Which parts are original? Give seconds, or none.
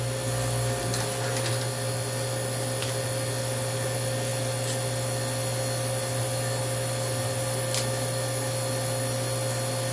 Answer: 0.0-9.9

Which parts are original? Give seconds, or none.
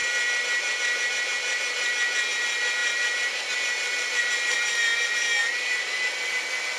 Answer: 0.0-6.8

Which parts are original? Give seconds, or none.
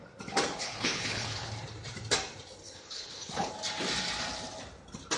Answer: 0.0-0.6; 1.5-2.6; 3.5-5.2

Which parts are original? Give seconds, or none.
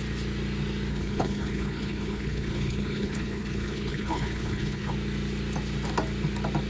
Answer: 0.0-0.9; 4.9-6.7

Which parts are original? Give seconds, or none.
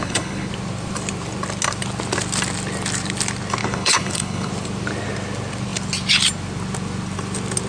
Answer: 0.5-3.6; 4.5-7.7